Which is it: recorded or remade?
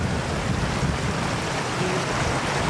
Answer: recorded